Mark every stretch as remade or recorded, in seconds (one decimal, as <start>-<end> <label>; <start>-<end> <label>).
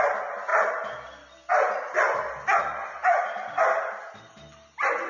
0.0-5.1 recorded